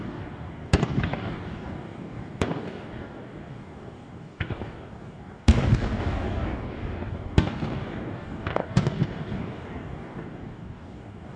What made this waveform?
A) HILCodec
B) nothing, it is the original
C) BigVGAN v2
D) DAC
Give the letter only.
D